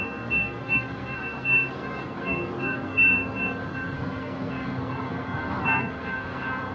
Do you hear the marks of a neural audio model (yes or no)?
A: yes